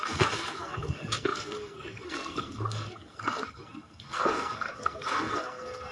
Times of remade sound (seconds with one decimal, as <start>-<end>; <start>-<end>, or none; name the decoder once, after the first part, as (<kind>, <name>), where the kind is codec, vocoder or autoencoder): 0.0-5.9 (codec, SNAC)